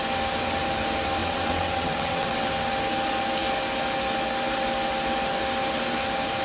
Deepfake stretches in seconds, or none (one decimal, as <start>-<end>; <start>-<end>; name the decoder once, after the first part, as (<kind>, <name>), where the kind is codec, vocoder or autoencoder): 1.2-2.5 (vocoder, WaveNeXt)